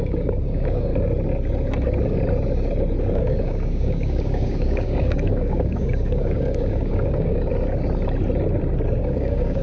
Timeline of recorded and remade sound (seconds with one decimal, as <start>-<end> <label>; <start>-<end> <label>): 0.0-0.9 remade; 0.9-3.0 recorded; 3.0-7.5 remade; 7.5-9.0 recorded; 9.0-9.6 remade